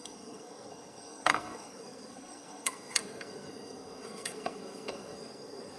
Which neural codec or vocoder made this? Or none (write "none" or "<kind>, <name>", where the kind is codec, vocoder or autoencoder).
codec, SNAC